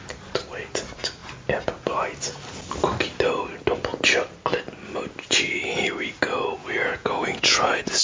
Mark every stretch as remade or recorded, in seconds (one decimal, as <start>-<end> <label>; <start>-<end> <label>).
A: 0.0-6.6 recorded; 6.6-8.0 remade